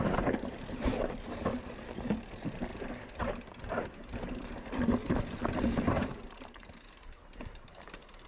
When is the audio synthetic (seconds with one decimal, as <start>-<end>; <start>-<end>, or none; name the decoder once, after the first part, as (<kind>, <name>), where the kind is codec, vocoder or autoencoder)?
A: 0.0-2.7 (vocoder, BigVGAN v2); 3.2-8.3